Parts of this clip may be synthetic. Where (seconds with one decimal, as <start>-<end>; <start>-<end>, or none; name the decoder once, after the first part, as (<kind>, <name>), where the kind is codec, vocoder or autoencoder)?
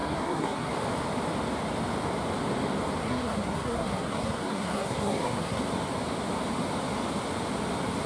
0.0-0.7 (codec, SNAC); 3.0-5.6